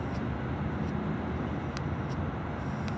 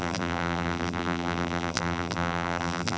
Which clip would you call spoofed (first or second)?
second